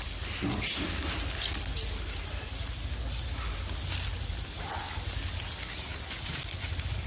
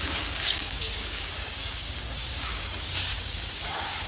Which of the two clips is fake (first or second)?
second